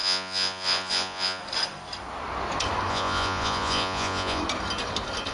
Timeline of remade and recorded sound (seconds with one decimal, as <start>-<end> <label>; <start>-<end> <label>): 0.0-1.4 remade; 1.4-2.9 recorded; 2.9-4.4 remade; 4.4-5.3 recorded